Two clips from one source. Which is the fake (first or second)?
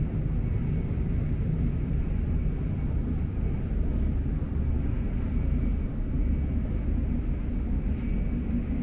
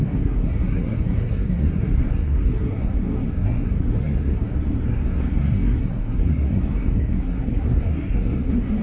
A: second